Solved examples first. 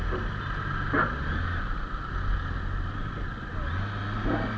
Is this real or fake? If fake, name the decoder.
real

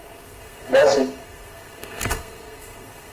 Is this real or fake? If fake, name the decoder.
fake, codec, SNAC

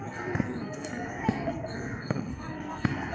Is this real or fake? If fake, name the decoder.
fake, codec, SNAC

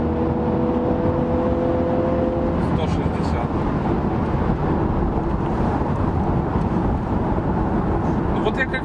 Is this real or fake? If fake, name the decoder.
real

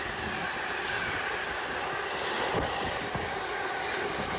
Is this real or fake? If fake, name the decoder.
real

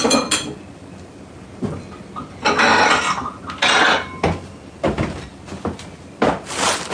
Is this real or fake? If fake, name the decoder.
real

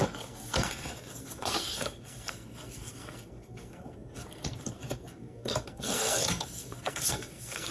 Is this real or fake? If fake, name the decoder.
fake, codec, SNAC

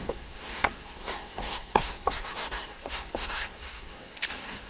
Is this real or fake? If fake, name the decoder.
fake, codec, SNAC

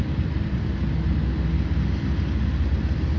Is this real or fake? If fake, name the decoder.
real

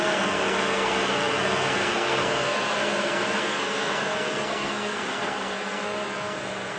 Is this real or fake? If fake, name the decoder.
fake, codec, SNAC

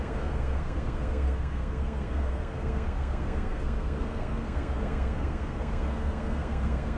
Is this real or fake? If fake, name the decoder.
fake, codec, SNAC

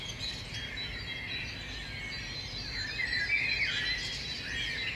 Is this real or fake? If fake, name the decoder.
real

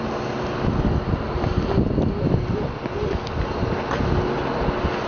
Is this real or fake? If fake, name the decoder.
real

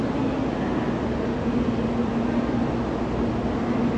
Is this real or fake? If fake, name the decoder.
real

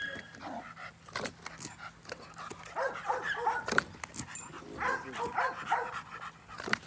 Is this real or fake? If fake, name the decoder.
real